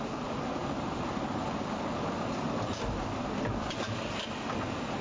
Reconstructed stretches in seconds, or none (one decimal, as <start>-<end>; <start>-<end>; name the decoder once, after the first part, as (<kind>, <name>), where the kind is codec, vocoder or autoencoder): none